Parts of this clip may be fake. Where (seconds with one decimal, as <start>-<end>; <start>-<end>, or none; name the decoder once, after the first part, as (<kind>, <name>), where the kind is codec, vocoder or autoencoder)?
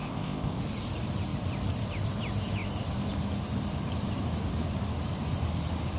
0.0-0.6 (codec, ZipCodec)